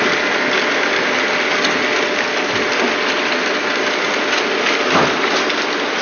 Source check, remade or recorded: recorded